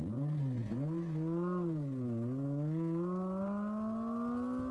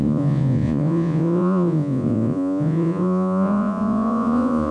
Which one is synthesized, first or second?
second